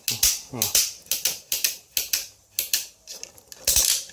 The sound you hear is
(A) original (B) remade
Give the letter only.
A